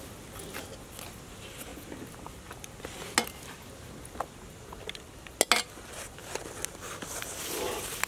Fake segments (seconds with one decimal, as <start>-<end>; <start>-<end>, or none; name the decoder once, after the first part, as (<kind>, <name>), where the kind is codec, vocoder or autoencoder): none